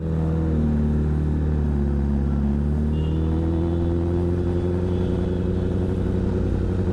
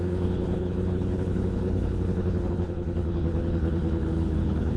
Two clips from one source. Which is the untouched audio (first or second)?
first